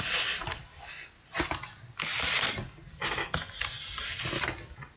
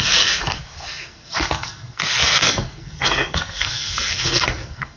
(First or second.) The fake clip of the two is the second